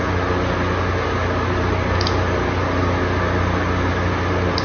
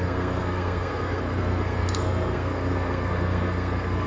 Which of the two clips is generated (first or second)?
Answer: second